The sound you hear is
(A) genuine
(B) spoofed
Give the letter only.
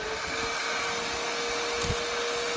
A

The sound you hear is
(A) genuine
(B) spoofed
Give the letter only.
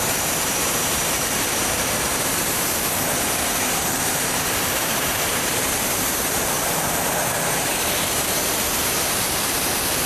B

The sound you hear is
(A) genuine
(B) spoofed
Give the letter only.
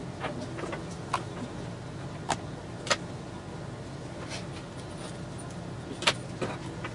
A